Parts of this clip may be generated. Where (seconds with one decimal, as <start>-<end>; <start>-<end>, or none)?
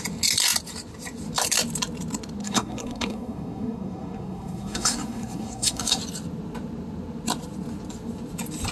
2.4-6.0